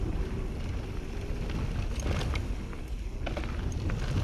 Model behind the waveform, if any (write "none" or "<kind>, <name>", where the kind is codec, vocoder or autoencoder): none